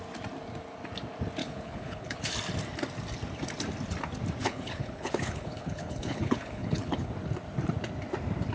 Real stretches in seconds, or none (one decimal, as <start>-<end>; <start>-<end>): 0.0-1.4; 2.3-4.4; 7.1-8.5